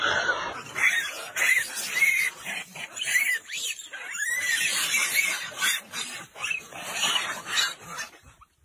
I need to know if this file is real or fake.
fake